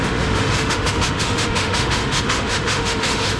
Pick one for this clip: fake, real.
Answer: fake